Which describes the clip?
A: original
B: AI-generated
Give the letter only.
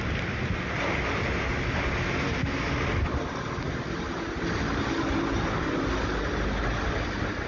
A